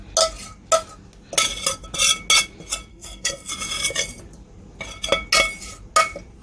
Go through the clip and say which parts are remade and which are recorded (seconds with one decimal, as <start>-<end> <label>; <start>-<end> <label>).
0.0-2.9 recorded; 2.9-3.5 remade; 3.5-6.4 recorded